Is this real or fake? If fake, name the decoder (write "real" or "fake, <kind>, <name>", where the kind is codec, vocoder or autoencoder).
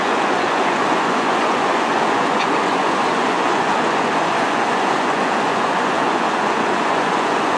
fake, vocoder, Vocos